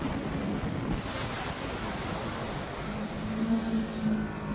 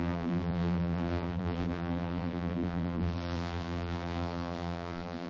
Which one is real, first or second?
first